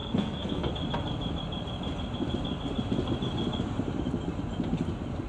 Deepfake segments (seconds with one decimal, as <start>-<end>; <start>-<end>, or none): 0.0-0.7

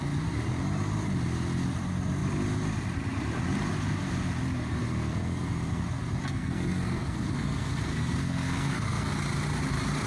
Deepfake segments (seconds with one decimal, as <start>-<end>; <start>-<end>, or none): 4.9-5.8; 6.2-9.1

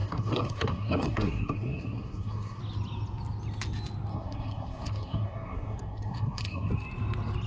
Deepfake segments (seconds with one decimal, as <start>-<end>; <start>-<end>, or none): 0.0-2.6; 4.1-6.7

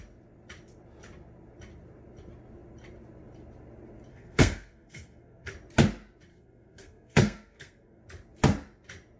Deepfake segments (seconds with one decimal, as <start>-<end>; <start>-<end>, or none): 4.1-5.5; 6.3-8.0

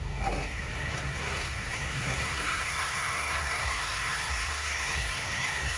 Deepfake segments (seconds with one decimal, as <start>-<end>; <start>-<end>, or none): 0.0-5.8